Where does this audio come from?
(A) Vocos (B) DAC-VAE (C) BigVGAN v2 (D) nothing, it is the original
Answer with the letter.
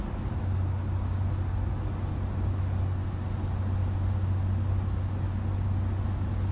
D